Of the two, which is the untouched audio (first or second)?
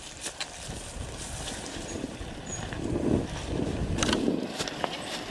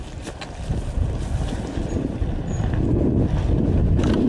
second